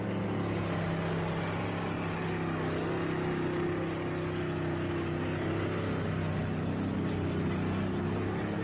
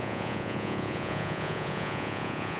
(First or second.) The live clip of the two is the first